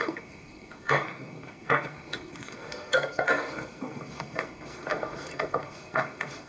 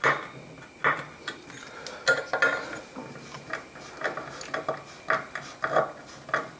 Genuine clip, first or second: second